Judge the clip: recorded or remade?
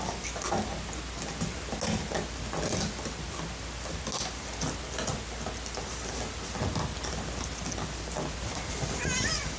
recorded